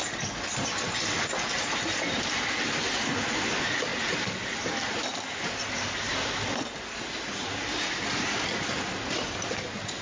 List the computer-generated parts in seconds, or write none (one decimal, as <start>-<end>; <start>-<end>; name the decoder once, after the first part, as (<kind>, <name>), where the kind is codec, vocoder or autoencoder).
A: none